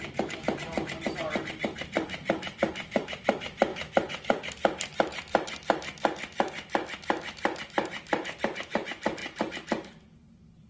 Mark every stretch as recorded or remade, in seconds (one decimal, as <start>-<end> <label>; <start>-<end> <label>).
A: 0.0-10.7 recorded